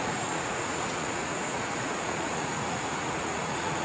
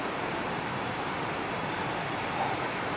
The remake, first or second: first